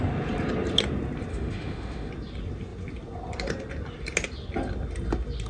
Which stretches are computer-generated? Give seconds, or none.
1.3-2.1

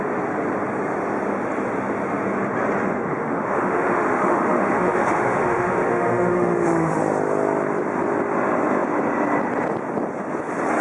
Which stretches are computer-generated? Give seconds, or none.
2.8-7.0

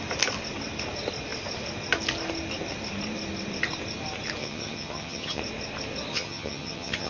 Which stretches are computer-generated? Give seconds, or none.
4.4-5.4; 6.1-7.1

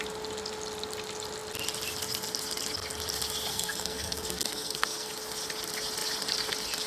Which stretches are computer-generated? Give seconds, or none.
3.5-5.1

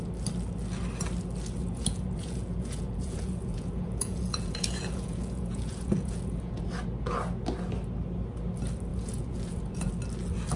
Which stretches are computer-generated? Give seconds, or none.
1.6-6.6; 8.9-9.9

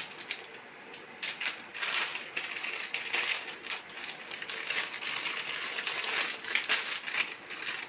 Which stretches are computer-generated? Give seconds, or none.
none